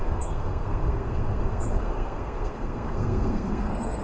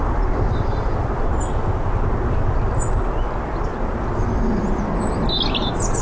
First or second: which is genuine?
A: second